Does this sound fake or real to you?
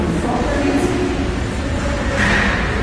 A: real